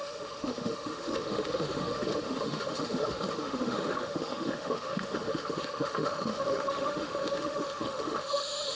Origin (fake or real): fake